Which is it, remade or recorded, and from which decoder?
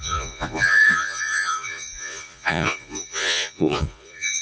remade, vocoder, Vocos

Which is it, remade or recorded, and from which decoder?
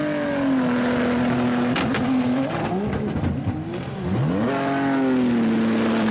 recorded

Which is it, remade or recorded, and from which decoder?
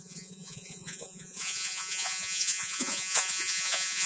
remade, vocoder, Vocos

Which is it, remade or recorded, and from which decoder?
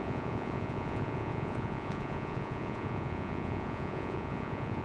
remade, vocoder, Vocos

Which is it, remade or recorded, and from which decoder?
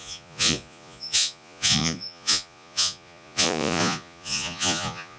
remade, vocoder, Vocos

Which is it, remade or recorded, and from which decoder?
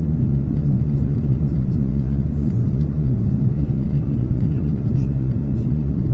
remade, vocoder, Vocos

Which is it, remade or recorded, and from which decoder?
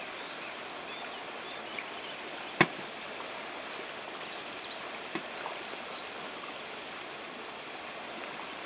recorded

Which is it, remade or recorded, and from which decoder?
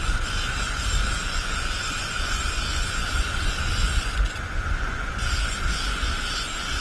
remade, vocoder, Vocos